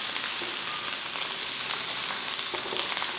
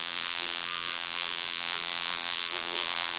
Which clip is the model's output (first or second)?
second